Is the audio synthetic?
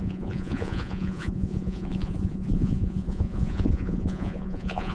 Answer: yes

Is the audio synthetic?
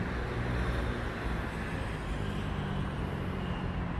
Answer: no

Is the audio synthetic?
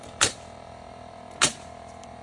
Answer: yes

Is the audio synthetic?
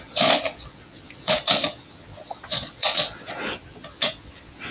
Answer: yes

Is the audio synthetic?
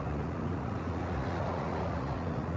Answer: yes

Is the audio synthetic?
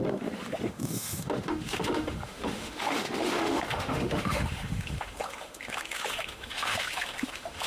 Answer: yes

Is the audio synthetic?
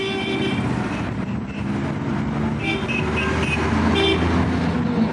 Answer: no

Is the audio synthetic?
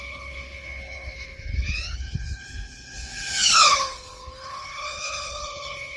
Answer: yes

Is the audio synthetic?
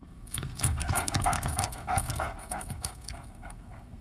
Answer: yes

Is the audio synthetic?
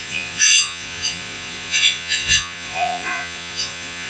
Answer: yes